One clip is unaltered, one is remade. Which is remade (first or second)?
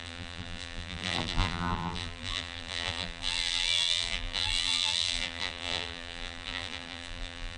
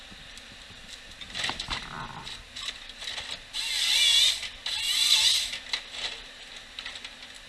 first